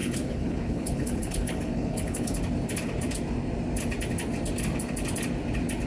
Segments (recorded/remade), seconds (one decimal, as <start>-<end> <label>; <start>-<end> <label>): 0.0-2.4 remade; 2.4-5.9 recorded